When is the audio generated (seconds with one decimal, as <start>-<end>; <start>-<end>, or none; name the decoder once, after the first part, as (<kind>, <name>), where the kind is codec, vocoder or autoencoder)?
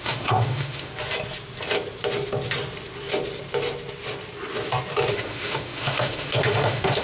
0.0-0.9 (autoencoder, DAC-VAE); 5.1-7.0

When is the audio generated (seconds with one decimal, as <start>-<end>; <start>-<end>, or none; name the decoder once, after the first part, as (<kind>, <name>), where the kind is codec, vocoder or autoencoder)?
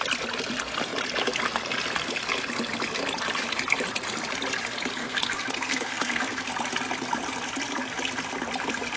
5.0-6.5 (codec, SNAC)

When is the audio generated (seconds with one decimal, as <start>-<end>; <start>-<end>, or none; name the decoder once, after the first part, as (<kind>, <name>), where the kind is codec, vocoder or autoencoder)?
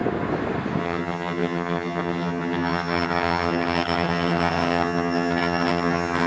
0.8-6.3 (vocoder, HiFi-GAN)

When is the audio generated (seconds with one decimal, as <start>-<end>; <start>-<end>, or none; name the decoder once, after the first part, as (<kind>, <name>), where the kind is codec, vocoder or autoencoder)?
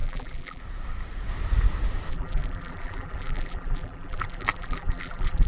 0.0-0.6 (vocoder, BigVGAN v2); 2.1-5.5